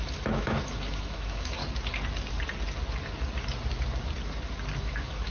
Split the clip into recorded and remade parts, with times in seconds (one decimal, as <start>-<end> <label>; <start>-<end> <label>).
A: 0.0-1.6 remade; 1.6-4.8 recorded; 4.8-5.3 remade